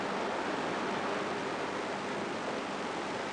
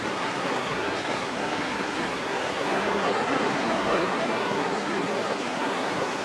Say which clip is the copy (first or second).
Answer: second